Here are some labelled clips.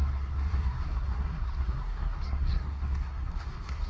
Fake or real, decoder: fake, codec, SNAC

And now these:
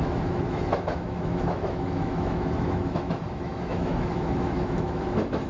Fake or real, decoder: fake, autoencoder, DAC-VAE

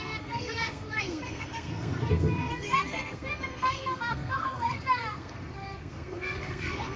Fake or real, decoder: fake, codec, SNAC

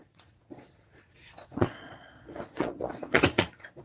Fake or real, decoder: fake, vocoder, Vocos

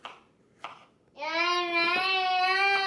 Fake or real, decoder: real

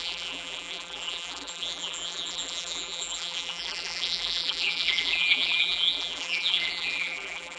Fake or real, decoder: fake, vocoder, BigVGAN v2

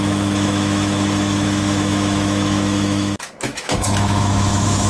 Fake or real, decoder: fake, autoencoder, DAC-VAE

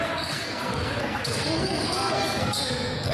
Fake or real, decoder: fake, codec, SNAC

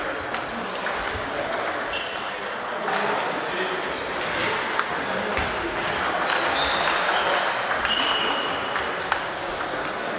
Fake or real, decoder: real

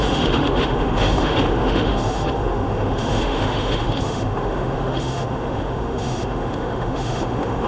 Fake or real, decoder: fake, autoencoder, DAC-VAE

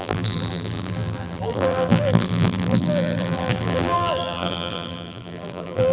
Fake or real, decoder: fake, vocoder, BigVGAN v2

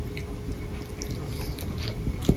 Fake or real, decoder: real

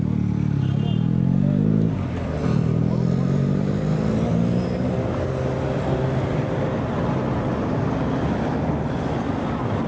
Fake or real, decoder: real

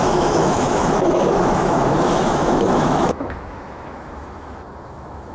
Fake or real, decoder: fake, autoencoder, DAC-VAE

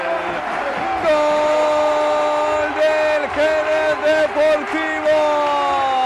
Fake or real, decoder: real